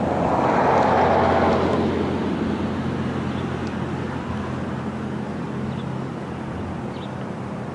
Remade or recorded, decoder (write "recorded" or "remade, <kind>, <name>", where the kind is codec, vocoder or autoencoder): recorded